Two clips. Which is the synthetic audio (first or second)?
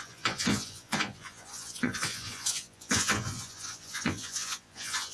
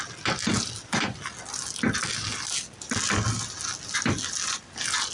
first